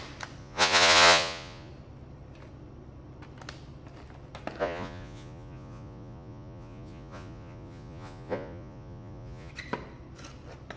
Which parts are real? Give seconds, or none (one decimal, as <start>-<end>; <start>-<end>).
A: 0.0-0.4; 1.7-4.6; 9.5-10.8